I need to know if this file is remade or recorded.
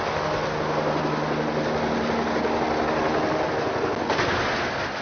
recorded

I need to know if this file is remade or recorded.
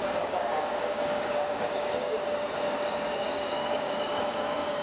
remade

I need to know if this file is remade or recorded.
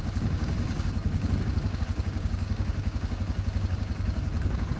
remade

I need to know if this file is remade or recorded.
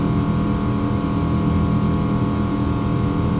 recorded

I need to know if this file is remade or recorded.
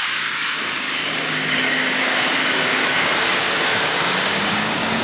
remade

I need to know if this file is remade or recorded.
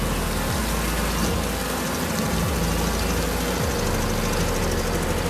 recorded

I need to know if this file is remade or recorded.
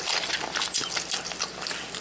recorded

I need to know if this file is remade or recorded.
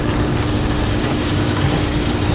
remade